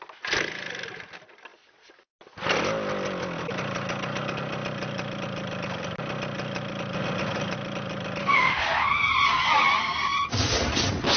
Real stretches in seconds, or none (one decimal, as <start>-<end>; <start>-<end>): 0.0-8.2; 8.7-11.2